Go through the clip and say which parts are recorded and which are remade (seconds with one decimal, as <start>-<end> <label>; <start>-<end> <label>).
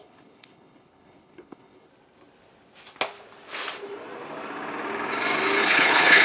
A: 0.0-1.9 remade; 1.9-5.6 recorded; 5.6-6.2 remade